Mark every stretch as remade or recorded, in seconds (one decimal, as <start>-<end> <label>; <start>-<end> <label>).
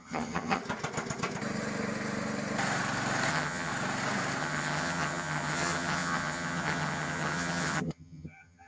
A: 0.0-0.6 remade; 0.6-3.3 recorded; 3.3-3.7 remade; 3.7-4.4 recorded; 4.4-8.7 remade